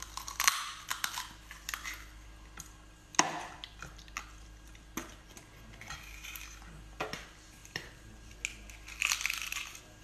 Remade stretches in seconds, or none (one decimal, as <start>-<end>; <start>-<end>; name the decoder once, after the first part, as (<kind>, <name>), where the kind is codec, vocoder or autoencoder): 7.6-8.3 (vocoder, BigVGAN v2)